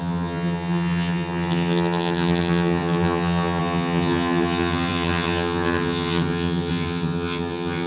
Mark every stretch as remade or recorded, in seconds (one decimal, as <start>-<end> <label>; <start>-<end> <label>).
0.0-7.9 remade